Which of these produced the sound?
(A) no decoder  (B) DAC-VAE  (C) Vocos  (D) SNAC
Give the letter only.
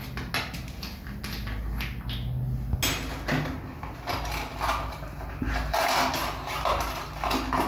A